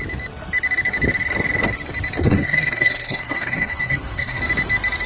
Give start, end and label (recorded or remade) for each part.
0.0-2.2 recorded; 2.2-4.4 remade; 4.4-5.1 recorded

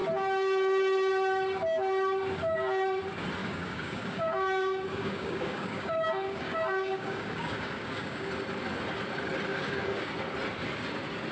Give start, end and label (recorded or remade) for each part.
0.0-3.4 recorded; 3.4-8.3 remade; 8.3-9.5 recorded; 9.5-10.1 remade; 10.1-11.3 recorded

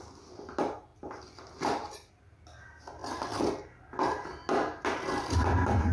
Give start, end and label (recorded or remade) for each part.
0.0-5.9 recorded

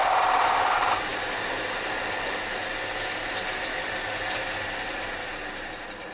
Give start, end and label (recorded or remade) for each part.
0.0-6.1 recorded

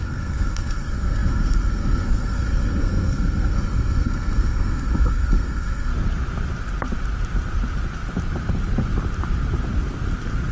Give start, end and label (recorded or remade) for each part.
0.0-5.9 remade; 5.9-10.5 recorded

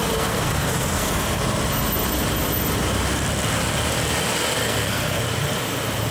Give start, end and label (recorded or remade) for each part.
0.0-1.4 remade; 1.4-4.6 recorded; 4.6-5.2 remade; 5.2-6.1 recorded